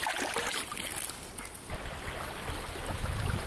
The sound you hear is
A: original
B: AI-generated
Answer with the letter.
A